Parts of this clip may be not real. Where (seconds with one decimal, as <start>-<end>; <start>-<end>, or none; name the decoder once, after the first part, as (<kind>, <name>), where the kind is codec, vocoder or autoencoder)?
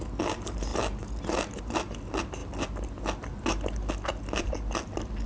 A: none